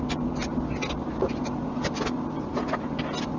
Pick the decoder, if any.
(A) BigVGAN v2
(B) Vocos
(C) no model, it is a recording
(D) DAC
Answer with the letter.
C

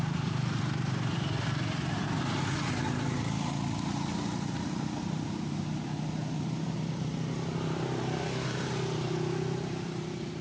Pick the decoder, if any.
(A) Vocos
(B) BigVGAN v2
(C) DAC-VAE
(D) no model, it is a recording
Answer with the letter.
B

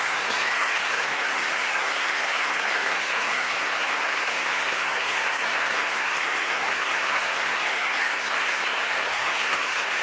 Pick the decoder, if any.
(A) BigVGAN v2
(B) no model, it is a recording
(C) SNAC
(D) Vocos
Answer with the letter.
C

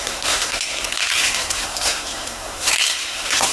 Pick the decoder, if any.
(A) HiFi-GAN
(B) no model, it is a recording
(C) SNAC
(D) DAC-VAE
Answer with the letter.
C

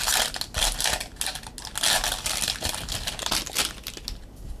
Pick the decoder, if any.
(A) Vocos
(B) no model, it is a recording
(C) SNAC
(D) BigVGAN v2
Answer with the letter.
B